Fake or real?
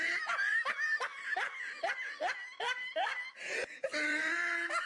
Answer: real